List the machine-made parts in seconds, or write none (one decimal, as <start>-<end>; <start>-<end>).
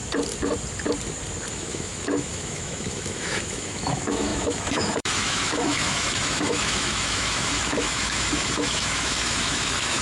1.5-10.0